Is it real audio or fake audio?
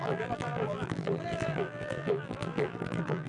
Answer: fake